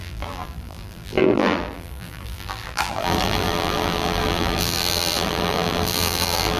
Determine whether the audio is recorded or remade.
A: remade